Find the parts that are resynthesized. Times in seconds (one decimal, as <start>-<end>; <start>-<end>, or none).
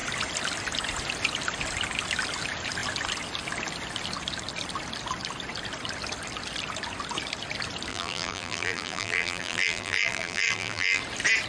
7.9-11.0